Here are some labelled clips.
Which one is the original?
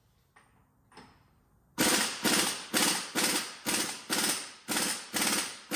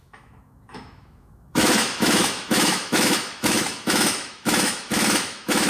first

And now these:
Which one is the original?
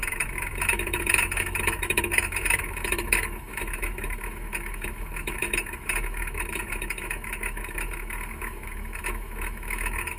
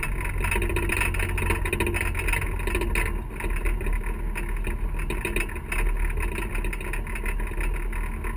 second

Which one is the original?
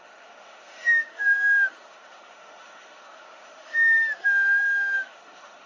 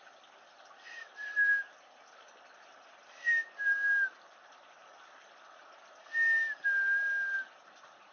second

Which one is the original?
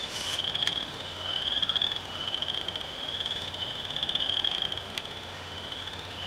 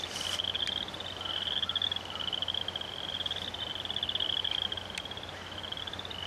second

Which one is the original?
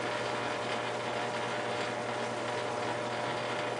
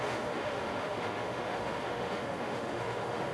first